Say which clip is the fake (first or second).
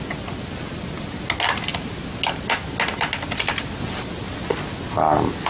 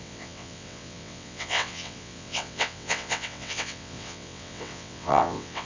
second